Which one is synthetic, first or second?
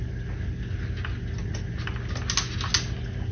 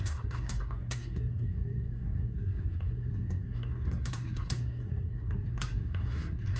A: second